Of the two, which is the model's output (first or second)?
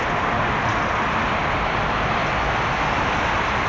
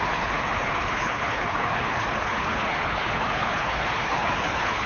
second